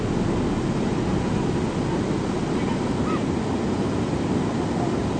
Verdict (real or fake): real